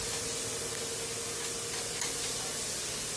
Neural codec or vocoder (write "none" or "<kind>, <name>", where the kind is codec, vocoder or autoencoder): none